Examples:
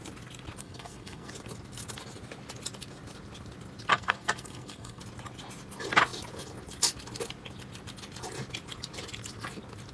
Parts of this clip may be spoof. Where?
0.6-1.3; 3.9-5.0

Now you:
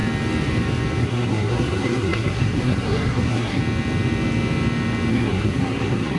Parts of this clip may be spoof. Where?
1.0-3.6; 5.1-6.2

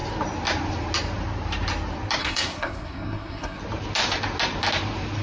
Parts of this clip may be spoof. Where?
2.2-3.6

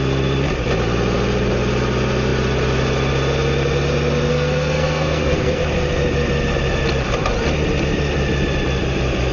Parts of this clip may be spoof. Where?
4.3-5.6